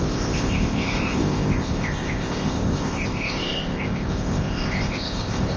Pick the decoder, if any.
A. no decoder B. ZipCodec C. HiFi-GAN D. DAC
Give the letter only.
B